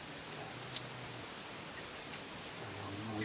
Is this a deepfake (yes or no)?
no